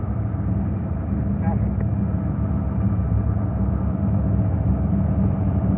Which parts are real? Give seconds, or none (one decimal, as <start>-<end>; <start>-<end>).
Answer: 1.2-4.7